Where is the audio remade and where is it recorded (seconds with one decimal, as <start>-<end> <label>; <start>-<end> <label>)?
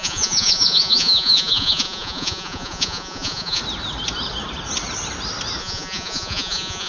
0.0-3.6 remade; 3.6-5.6 recorded; 5.6-6.9 remade